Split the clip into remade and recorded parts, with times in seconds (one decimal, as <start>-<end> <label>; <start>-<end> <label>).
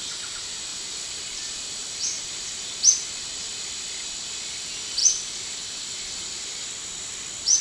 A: 0.0-0.7 recorded; 0.7-2.2 remade; 2.2-5.0 recorded; 5.0-6.1 remade; 6.1-7.6 recorded